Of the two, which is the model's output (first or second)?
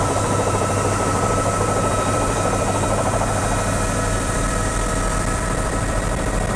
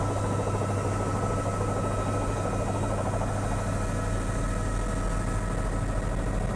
first